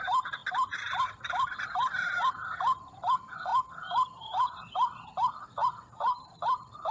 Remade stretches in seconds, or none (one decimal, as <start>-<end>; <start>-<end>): 0.0-6.9